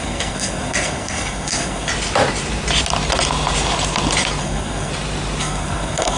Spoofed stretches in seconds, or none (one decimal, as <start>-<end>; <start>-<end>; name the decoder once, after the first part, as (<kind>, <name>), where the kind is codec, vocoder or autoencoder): 0.0-1.9 (codec, SNAC); 4.4-4.9; 5.4-6.2